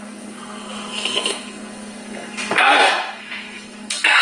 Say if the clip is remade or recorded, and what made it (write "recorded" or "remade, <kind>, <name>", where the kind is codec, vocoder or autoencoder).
remade, codec, SNAC